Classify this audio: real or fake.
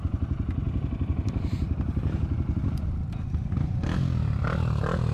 real